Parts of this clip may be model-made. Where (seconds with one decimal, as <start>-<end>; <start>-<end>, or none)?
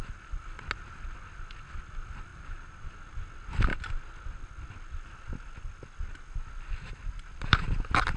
2.3-2.9